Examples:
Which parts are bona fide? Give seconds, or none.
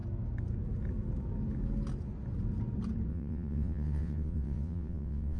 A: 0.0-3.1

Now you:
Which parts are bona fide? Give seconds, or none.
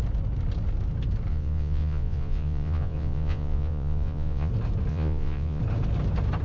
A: 0.0-1.3; 4.5-4.9; 5.6-6.4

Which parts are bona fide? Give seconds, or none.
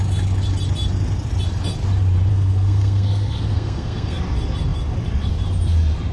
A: 0.0-2.3; 4.2-6.1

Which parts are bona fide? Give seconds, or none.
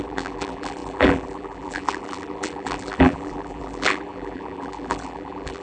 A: none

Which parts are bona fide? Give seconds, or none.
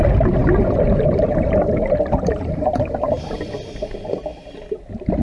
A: 0.0-0.4; 3.5-5.2